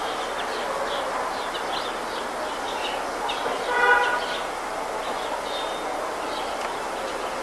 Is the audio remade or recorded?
recorded